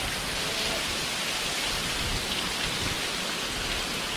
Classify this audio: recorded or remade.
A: recorded